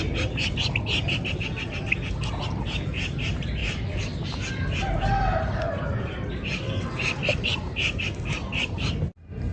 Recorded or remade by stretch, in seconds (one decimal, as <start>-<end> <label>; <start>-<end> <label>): 0.0-9.5 recorded